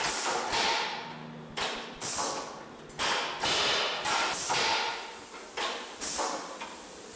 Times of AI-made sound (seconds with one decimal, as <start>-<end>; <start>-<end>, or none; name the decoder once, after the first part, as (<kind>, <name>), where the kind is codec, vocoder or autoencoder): 1.5-2.1 (vocoder, BigVGAN v2)